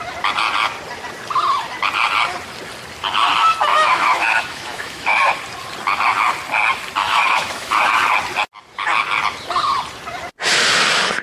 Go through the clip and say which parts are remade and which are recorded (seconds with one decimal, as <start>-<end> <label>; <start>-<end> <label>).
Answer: 0.0-3.7 recorded; 3.7-5.3 remade; 5.3-7.0 recorded; 7.0-7.9 remade; 7.9-11.2 recorded